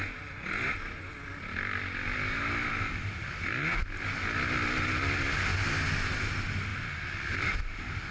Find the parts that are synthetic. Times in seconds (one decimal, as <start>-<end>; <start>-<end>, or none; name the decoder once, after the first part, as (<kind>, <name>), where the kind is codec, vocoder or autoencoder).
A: none